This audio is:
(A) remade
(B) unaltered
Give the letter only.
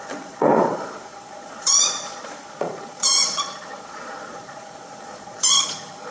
A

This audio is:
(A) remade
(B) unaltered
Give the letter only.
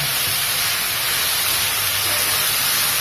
B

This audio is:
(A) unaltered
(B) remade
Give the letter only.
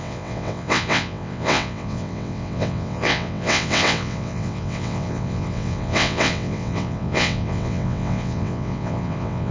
B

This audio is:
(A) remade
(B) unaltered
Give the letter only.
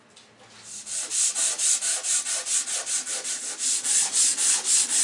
B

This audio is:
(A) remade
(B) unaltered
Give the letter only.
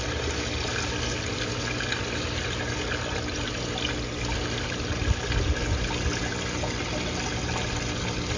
B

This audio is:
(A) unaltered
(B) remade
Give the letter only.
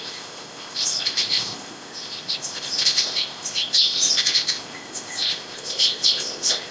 B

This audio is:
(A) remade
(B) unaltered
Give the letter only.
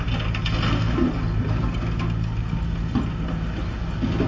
B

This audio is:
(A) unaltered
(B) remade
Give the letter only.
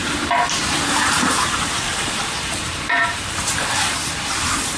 B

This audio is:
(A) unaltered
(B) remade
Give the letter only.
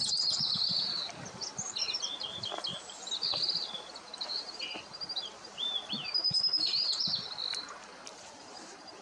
B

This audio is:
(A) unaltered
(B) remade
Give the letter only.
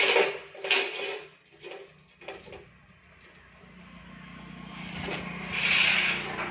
A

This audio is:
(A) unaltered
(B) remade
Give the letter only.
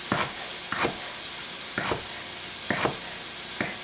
A